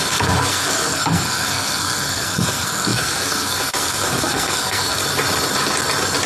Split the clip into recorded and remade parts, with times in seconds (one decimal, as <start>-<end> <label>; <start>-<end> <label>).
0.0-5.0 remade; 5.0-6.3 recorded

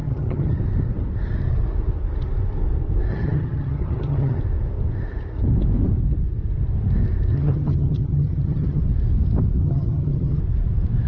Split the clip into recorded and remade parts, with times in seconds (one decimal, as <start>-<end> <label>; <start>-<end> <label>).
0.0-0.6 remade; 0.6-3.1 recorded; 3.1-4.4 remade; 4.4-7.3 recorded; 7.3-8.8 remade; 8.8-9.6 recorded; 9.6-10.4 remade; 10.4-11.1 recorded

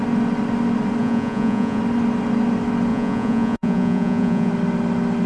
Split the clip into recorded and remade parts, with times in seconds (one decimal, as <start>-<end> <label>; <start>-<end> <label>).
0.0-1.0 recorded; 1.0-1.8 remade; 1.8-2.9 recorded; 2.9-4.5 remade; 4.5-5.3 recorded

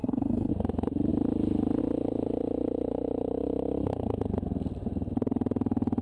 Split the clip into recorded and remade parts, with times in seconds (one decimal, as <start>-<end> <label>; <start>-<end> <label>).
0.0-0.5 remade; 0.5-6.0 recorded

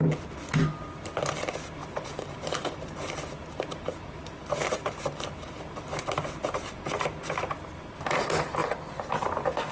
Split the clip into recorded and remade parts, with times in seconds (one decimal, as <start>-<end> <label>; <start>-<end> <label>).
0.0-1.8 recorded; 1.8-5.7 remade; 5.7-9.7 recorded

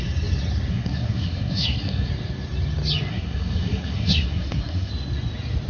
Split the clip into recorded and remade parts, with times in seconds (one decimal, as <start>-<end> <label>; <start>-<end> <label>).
0.0-0.7 recorded; 0.7-2.1 remade; 2.1-3.1 recorded; 3.1-4.9 remade; 4.9-5.7 recorded

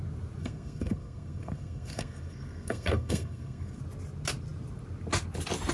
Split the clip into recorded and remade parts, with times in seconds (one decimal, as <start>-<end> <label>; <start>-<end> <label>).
0.0-0.4 recorded; 0.4-3.8 remade; 3.8-5.7 recorded